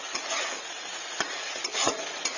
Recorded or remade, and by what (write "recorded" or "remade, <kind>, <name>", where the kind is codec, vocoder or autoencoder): remade, vocoder, Vocos